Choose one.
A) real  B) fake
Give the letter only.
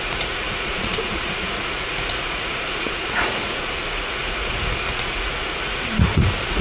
B